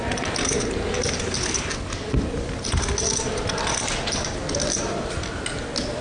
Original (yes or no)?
yes